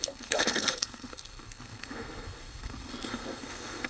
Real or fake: fake